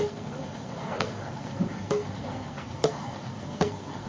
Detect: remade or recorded remade